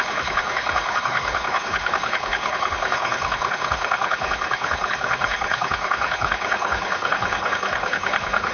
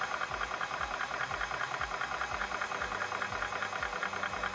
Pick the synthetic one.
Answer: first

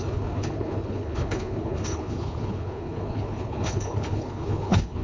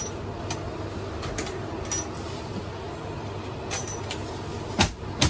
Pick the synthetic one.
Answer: first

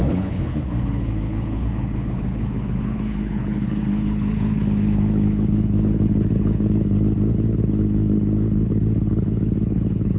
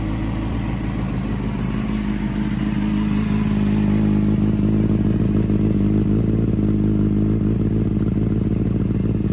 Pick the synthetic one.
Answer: first